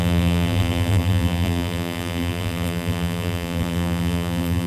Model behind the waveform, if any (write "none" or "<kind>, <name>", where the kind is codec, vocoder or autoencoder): vocoder, BigVGAN v2